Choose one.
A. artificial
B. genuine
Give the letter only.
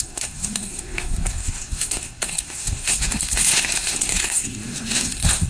A